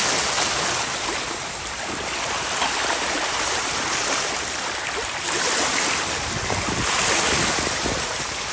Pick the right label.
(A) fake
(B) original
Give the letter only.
B